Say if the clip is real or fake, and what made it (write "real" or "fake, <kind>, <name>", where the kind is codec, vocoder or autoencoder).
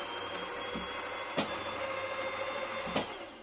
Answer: real